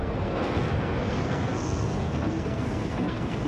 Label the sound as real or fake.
fake